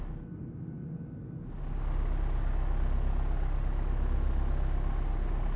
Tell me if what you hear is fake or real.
real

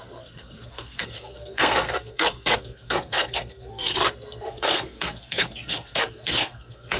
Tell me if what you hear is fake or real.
fake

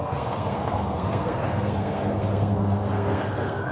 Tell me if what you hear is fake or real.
fake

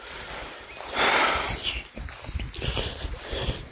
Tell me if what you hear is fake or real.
real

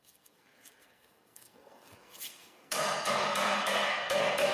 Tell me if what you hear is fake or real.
fake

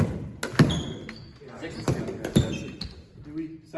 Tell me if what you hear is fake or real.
real